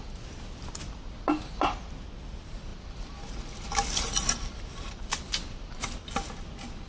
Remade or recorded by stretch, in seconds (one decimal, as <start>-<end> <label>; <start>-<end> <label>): 0.0-6.9 recorded